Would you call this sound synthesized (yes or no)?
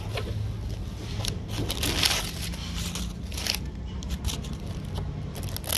no